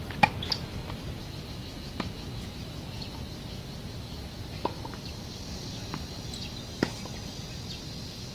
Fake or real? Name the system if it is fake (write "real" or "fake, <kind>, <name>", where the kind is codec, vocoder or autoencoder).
real